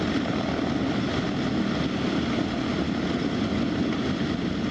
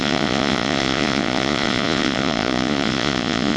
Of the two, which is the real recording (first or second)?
first